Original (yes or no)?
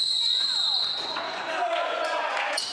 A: no